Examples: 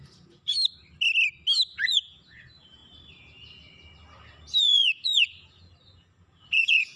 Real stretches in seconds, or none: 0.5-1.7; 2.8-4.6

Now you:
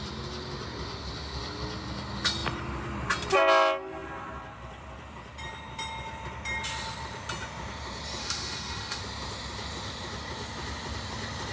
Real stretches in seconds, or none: 0.0-8.2; 9.0-11.5